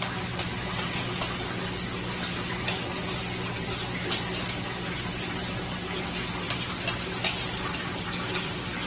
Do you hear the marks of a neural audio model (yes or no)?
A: no